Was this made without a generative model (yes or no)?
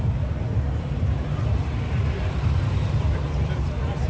yes